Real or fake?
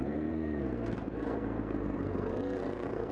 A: fake